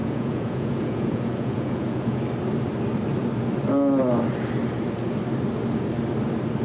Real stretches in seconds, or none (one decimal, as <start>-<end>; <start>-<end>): 2.2-6.6